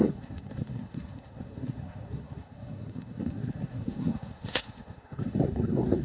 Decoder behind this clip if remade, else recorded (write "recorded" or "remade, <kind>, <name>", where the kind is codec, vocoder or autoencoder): remade, codec, SNAC